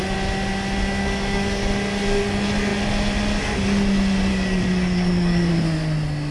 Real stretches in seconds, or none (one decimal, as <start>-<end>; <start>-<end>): 0.0-1.0; 1.7-4.3; 5.5-6.3